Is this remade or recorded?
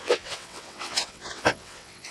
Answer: remade